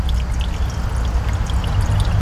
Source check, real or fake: real